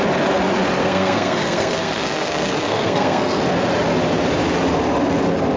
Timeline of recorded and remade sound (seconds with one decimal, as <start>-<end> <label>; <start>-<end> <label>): 0.0-0.8 recorded; 0.8-3.4 remade; 3.4-5.6 recorded